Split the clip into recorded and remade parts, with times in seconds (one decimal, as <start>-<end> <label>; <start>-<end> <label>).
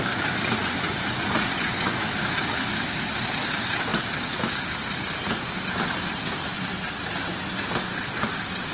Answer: 0.0-0.6 recorded; 0.6-2.0 remade; 2.0-8.7 recorded